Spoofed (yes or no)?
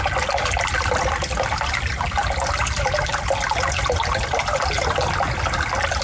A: no